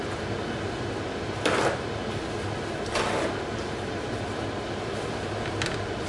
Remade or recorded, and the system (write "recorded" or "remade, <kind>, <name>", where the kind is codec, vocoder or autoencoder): recorded